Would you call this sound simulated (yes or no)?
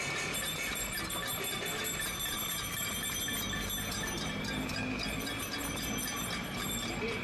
yes